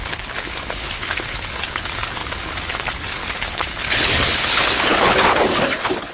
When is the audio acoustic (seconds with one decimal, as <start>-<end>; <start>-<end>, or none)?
none